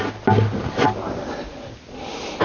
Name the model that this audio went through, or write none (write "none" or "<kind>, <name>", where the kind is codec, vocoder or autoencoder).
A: none